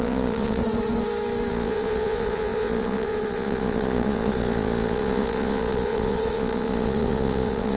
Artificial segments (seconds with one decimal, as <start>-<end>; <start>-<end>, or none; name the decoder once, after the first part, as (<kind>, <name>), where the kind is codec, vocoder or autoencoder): 0.0-0.6 (vocoder, Vocos); 1.5-7.8